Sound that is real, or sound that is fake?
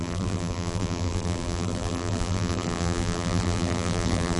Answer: fake